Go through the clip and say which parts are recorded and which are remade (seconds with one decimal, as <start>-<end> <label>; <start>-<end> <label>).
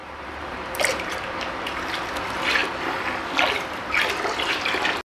0.0-2.1 remade; 2.1-5.0 recorded